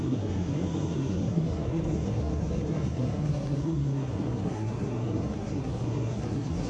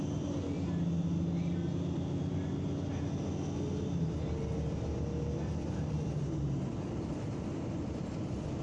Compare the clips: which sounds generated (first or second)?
first